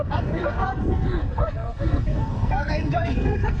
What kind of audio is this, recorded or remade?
remade